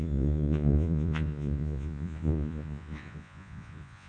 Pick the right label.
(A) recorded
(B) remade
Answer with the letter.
B